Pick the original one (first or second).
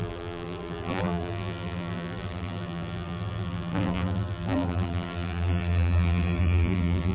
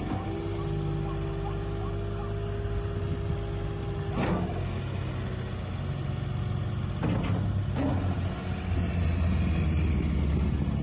second